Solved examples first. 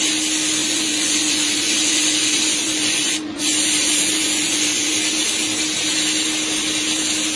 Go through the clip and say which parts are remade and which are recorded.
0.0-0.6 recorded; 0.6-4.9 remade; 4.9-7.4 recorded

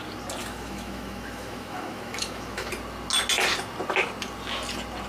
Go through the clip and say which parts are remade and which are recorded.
0.0-0.4 recorded; 0.4-2.7 remade; 2.7-5.1 recorded